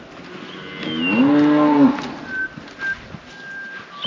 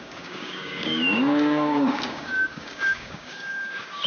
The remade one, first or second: second